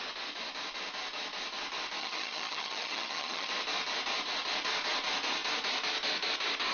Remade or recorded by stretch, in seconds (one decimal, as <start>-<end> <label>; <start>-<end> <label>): 0.0-2.0 recorded; 2.0-3.5 remade; 3.5-6.7 recorded